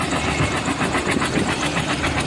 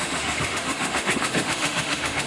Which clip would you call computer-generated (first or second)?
second